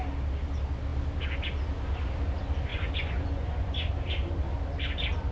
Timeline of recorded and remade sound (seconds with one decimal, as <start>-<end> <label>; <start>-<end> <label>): 0.0-2.7 recorded; 2.7-3.9 remade; 3.9-5.3 recorded